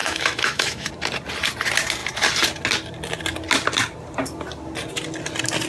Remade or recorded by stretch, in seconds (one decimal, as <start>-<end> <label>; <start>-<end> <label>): 0.0-0.9 remade; 0.9-5.7 recorded